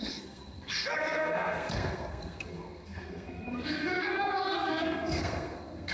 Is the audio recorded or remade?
remade